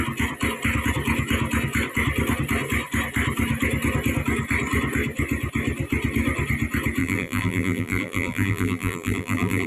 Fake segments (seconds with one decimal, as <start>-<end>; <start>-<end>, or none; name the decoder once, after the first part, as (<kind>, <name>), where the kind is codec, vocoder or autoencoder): 7.0-9.7 (vocoder, BigVGAN v2)